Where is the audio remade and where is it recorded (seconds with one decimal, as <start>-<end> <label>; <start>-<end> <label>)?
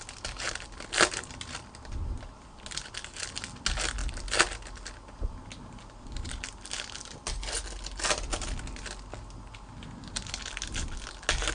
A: 0.0-11.5 recorded